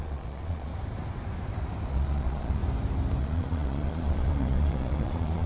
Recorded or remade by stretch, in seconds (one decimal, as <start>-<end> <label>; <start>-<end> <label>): 0.0-0.7 remade; 0.7-1.9 recorded; 1.9-2.6 remade; 2.6-3.2 recorded; 3.2-5.5 remade